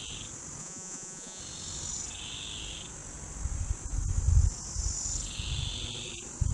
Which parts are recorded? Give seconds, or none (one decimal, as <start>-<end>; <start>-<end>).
0.0-0.6; 1.4-6.5